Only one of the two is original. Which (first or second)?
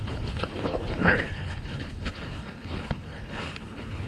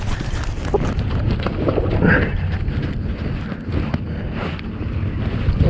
second